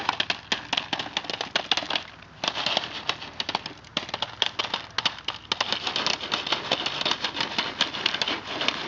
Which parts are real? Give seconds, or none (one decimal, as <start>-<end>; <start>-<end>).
0.0-3.9; 4.6-8.9